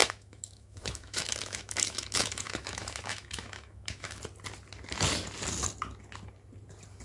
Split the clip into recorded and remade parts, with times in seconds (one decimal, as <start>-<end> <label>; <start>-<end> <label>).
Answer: 0.0-4.2 remade; 4.2-7.0 recorded